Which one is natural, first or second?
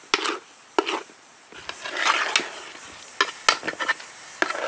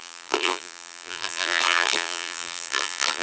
first